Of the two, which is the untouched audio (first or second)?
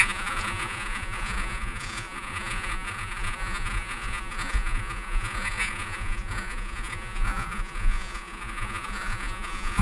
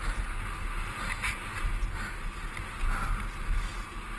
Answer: second